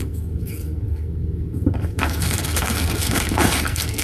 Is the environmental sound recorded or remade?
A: remade